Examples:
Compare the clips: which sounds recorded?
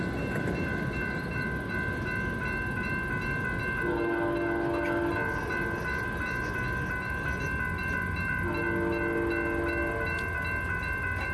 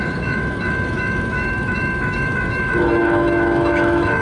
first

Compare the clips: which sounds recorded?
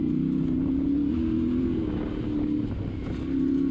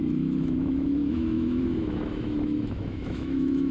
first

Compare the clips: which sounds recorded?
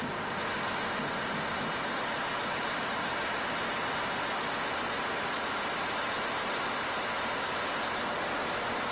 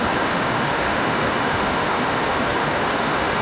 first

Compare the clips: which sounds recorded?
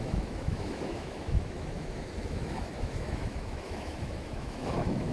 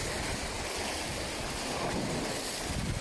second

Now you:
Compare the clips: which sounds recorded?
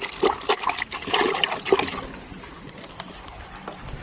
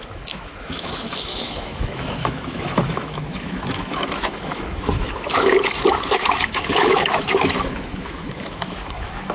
first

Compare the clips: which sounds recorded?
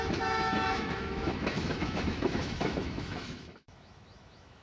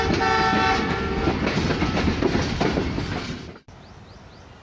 second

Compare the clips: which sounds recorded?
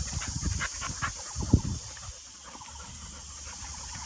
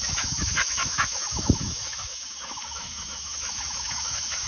first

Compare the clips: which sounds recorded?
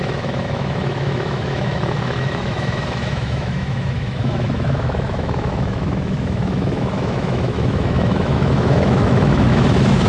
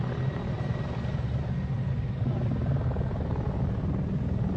second